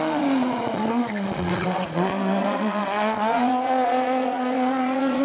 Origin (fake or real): fake